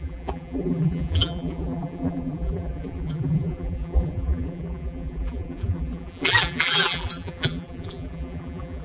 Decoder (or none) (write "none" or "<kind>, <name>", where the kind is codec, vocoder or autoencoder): vocoder, BigVGAN v2